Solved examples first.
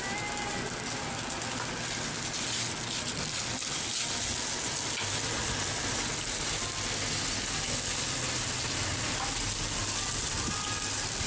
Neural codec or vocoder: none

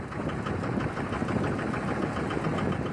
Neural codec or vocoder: none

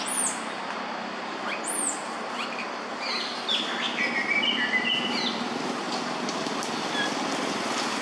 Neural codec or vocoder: none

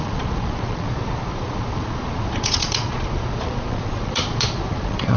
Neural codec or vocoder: vocoder, Vocos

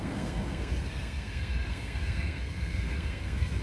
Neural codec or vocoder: codec, SNAC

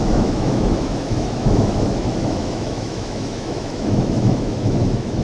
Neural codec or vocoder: autoencoder, DAC-VAE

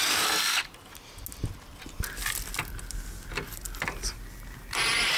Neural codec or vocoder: none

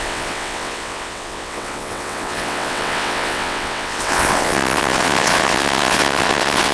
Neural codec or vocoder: vocoder, WaveNeXt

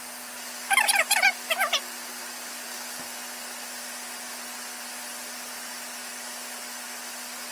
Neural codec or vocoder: none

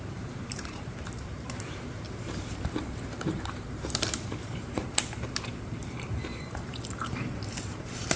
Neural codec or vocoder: vocoder, BigVGAN v2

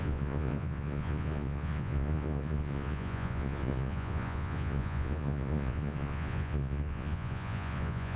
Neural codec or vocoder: vocoder, Vocos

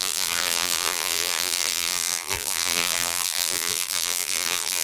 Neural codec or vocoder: vocoder, BigVGAN v2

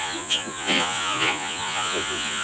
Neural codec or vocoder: vocoder, Vocos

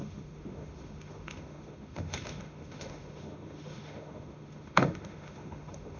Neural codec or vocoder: autoencoder, DAC-VAE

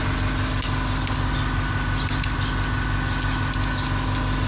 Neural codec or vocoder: none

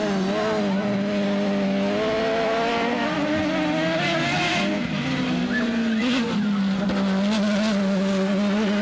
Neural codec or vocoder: none